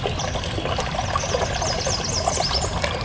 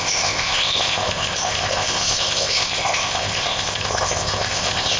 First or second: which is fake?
second